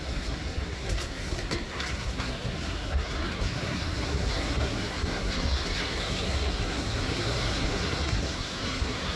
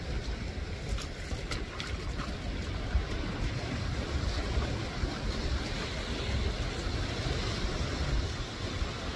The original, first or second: second